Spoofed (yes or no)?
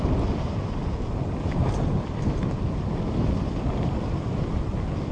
no